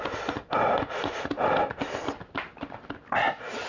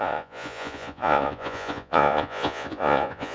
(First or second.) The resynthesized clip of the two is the second